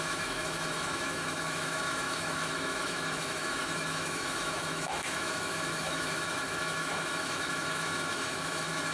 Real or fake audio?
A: fake